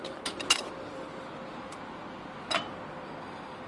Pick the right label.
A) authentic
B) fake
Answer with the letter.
A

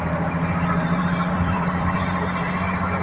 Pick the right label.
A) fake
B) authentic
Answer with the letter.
A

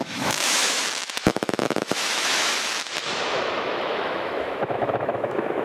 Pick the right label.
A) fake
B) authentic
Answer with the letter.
A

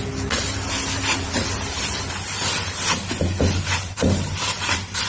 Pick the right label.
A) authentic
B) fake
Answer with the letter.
A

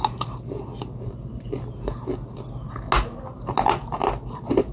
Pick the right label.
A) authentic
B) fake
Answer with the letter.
A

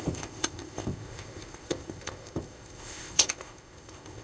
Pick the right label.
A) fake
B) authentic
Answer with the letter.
A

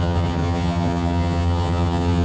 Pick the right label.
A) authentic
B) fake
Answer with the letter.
B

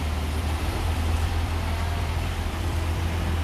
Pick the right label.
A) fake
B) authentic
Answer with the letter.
A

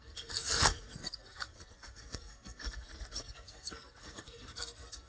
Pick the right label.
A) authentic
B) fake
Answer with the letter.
B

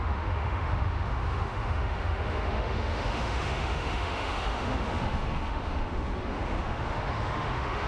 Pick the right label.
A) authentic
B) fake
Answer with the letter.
B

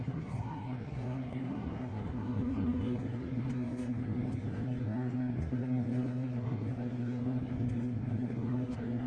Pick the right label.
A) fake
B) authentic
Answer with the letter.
A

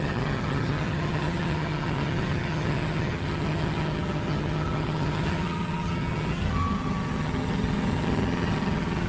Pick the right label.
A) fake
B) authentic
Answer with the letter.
A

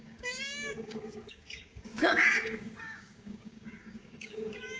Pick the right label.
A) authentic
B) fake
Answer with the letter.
B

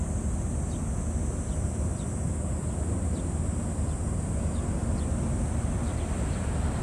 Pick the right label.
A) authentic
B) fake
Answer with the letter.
A